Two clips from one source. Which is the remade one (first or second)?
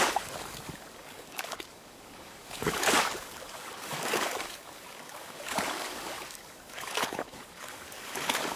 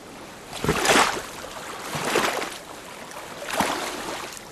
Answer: first